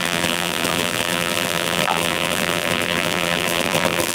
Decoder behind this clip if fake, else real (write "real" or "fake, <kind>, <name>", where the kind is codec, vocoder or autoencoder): fake, vocoder, BigVGAN v2